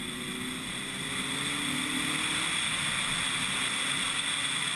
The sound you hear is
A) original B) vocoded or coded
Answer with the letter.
A